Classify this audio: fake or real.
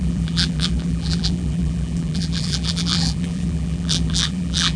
fake